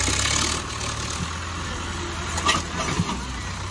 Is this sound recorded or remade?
recorded